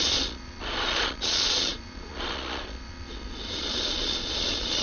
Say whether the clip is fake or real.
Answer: fake